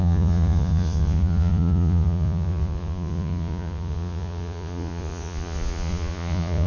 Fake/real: fake